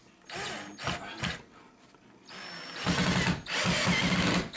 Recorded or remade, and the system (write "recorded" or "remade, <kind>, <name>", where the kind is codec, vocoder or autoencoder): recorded